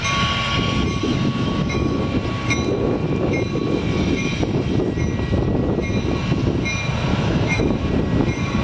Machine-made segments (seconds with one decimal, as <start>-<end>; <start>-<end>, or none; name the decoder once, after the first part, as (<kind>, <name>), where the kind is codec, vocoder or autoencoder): 1.0-2.0 (autoencoder, DAC-VAE); 7.1-7.6